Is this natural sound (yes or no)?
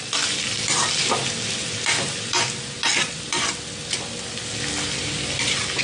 yes